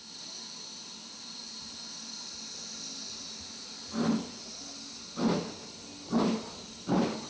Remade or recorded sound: recorded